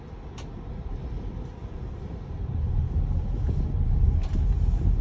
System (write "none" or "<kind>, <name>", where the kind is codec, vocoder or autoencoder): none